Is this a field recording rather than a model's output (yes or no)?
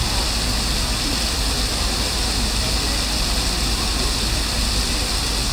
yes